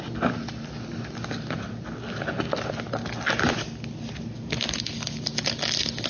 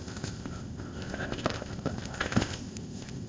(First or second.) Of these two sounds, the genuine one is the first